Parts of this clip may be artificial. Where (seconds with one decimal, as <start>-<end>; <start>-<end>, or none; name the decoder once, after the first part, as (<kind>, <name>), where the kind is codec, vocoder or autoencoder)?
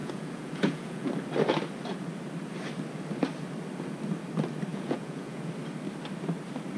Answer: 0.0-1.1 (vocoder, Vocos); 4.7-5.5